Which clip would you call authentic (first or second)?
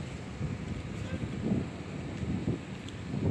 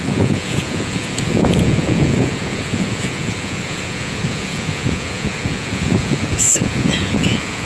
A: first